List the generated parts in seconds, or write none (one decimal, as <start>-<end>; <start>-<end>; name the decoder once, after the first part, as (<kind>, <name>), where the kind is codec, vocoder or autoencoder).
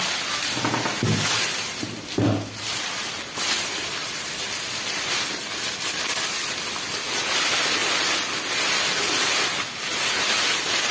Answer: none